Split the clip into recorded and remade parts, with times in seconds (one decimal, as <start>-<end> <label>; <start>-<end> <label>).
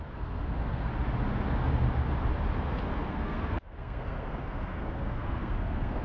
0.0-0.9 remade; 0.9-3.1 recorded; 3.1-6.0 remade